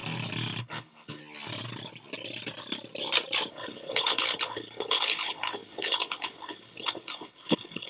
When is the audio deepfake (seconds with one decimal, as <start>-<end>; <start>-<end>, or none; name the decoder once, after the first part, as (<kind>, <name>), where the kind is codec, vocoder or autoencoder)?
0.6-1.2 (codec, HILCodec); 3.5-7.9